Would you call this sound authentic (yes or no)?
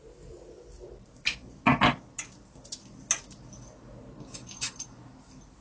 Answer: yes